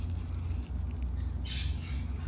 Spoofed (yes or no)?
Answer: no